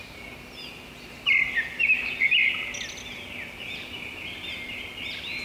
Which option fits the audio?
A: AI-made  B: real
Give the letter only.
B